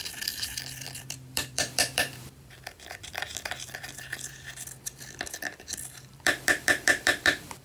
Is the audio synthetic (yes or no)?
yes